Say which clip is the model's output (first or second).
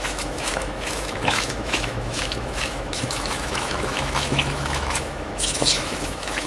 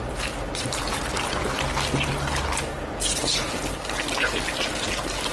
first